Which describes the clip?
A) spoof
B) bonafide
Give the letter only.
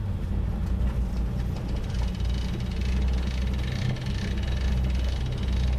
B